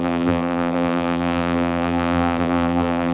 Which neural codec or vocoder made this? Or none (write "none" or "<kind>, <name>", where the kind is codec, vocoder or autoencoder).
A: vocoder, BigVGAN v2